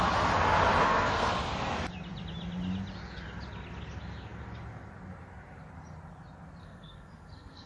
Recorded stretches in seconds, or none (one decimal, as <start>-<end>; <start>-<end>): 0.0-0.8; 1.3-6.6